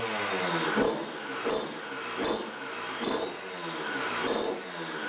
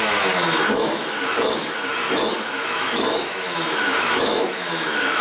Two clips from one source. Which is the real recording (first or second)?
first